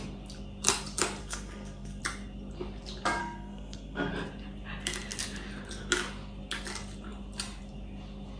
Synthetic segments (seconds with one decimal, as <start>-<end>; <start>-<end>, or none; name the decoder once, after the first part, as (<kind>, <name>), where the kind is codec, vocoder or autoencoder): 1.2-2.0 (codec, SNAC); 3.2-4.1